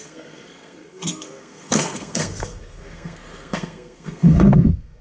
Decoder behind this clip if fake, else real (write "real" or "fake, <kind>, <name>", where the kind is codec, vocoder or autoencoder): fake, codec, SNAC